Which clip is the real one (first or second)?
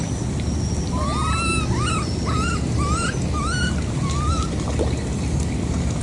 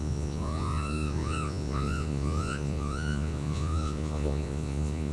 first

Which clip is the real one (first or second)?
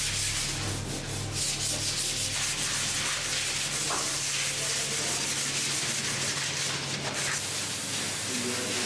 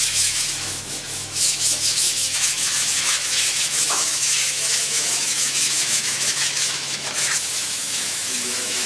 first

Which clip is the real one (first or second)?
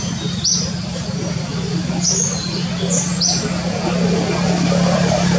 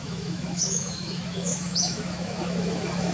first